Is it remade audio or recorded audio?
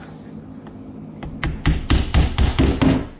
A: recorded